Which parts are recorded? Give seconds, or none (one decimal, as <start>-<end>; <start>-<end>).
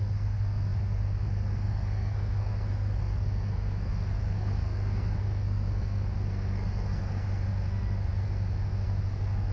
none